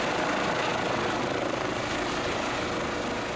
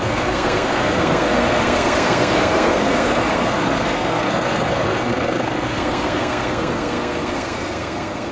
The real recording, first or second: first